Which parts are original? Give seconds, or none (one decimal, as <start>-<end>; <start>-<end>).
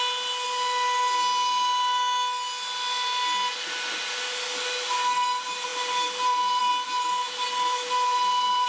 0.0-8.7